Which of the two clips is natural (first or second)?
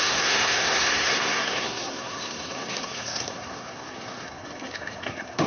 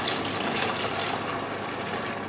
second